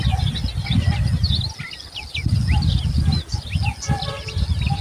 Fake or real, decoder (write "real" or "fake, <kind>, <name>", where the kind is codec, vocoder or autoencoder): real